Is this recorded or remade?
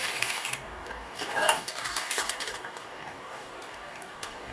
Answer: remade